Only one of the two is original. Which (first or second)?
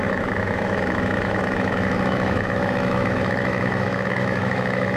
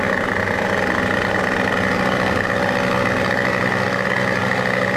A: second